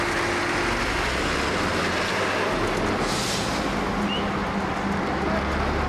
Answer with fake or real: real